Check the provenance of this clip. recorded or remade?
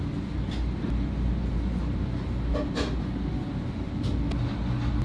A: recorded